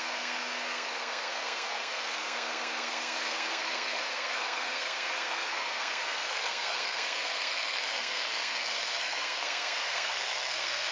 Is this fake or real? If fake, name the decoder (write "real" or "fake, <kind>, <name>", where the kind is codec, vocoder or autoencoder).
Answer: fake, codec, SNAC